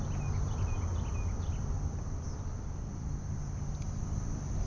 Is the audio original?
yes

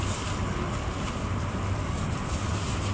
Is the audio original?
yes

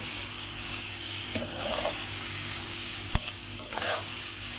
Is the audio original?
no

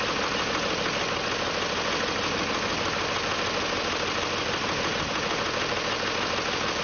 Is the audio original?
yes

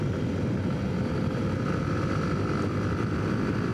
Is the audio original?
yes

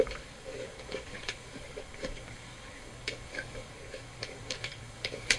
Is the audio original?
no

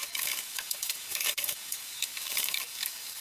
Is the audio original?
no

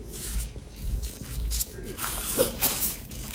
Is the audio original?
no